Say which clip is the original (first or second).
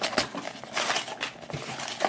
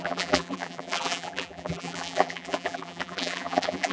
first